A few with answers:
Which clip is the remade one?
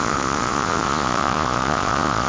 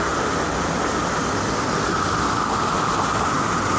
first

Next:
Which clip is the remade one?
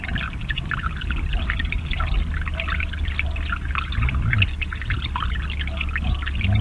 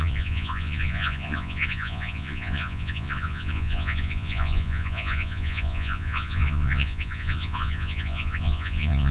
second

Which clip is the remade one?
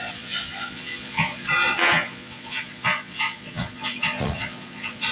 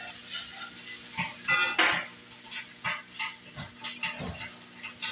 first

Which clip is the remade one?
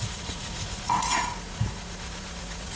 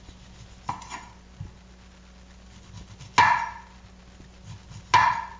first